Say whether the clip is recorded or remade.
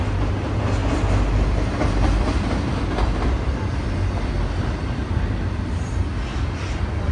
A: recorded